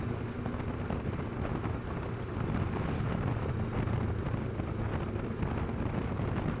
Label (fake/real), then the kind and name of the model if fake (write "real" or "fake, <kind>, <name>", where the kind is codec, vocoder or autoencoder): real